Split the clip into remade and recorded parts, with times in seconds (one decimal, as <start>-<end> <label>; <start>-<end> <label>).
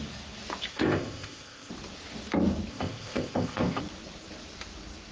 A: 0.0-0.7 recorded; 0.7-1.7 remade; 1.7-2.7 recorded; 2.7-3.8 remade; 3.8-5.1 recorded